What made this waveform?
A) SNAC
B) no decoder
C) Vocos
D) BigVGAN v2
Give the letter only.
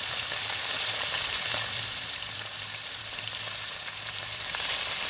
D